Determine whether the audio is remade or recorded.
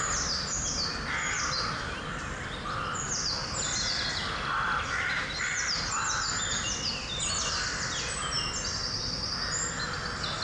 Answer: recorded